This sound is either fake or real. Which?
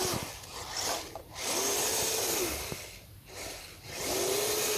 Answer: real